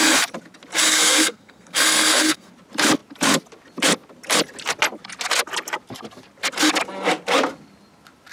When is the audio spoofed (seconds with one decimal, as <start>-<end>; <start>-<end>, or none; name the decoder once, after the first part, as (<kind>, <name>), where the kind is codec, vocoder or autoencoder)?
0.9-2.5 (codec, SNAC)